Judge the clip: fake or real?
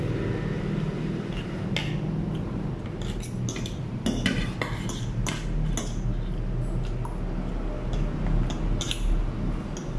real